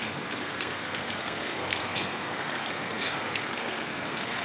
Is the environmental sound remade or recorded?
remade